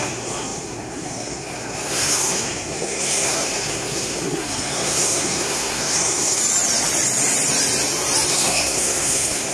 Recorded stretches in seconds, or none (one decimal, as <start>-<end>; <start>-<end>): 6.4-8.3